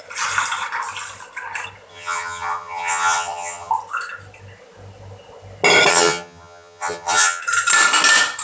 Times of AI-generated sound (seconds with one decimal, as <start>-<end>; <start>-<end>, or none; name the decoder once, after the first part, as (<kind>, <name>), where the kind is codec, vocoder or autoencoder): 1.9-3.7 (vocoder, HiFi-GAN); 5.9-7.4